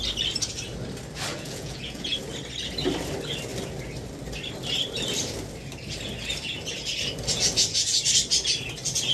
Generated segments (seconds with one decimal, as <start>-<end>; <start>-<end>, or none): 1.3-2.2